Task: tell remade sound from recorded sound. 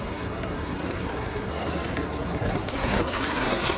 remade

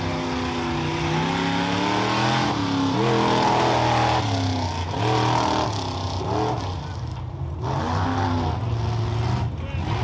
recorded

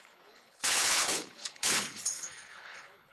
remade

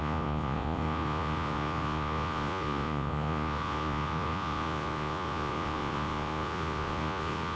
remade